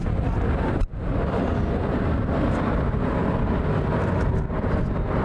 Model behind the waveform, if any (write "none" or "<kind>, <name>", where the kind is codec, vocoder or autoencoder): none